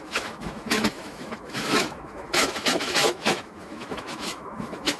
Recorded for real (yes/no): no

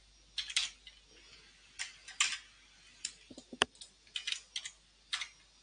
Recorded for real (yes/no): yes